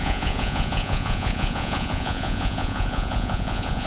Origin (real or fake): fake